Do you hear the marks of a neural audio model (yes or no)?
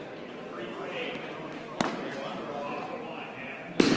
no